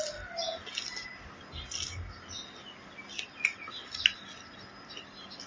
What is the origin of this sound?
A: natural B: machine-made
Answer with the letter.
A